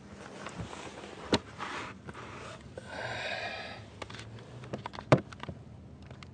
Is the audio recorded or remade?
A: recorded